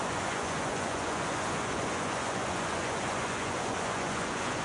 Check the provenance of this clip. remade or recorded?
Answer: remade